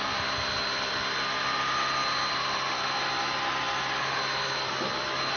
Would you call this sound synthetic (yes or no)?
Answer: no